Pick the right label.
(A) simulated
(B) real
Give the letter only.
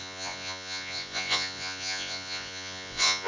A